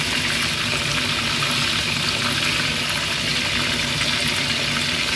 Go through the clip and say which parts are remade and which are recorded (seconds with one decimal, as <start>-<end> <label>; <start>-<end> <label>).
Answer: 0.0-5.2 recorded